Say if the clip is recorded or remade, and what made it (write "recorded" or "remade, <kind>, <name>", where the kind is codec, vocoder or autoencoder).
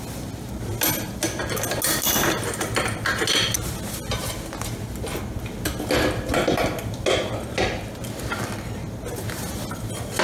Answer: recorded